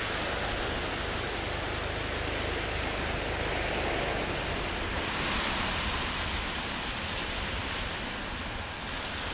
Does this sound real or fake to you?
real